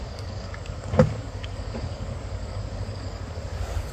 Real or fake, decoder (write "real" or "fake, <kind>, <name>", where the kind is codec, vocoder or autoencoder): fake, codec, DAC